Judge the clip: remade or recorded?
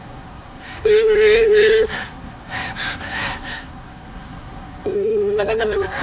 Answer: remade